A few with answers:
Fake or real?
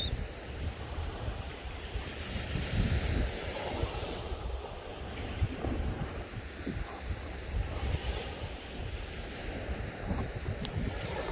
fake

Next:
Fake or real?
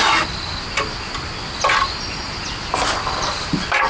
real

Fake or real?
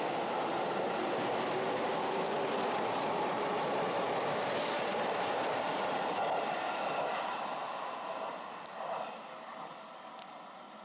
fake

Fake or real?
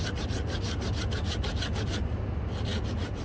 real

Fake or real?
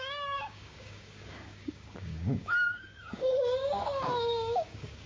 fake